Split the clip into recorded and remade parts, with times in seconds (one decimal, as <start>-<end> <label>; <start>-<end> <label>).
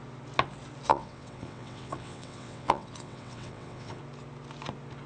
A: 0.0-0.9 recorded; 0.9-4.0 remade; 4.0-5.1 recorded